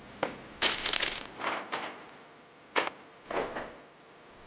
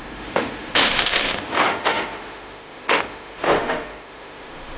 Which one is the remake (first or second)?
second